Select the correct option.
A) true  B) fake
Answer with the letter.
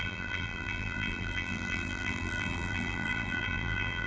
B